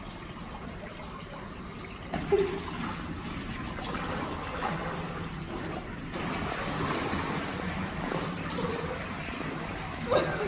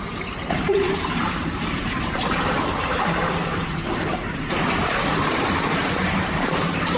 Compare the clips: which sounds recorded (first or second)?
first